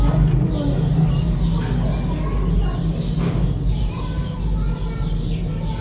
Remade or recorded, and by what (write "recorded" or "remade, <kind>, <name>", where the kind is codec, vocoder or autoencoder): recorded